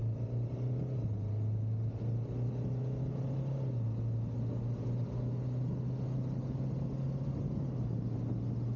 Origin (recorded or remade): recorded